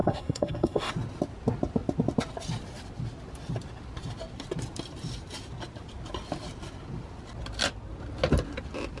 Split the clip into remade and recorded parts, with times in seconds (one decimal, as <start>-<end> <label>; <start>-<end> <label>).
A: 0.0-0.9 remade; 0.9-9.0 recorded